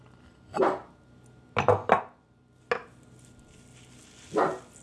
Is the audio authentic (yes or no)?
yes